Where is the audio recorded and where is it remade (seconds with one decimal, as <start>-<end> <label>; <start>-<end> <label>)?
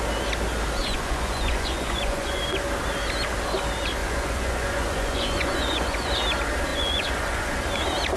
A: 0.0-0.8 recorded; 0.8-2.4 remade; 2.4-4.0 recorded; 4.0-6.1 remade; 6.1-6.7 recorded; 6.7-7.6 remade; 7.6-8.2 recorded